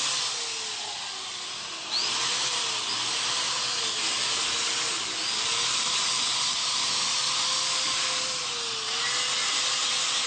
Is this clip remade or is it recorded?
recorded